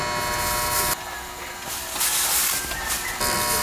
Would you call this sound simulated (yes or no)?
no